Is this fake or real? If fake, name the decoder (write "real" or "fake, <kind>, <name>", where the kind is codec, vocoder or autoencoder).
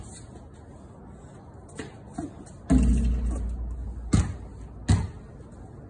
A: real